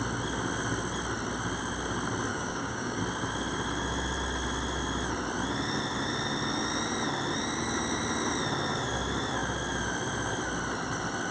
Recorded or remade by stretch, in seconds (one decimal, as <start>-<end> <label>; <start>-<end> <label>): 0.0-2.3 recorded; 2.3-3.0 remade; 3.0-11.3 recorded